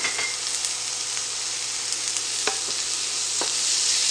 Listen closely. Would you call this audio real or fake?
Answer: real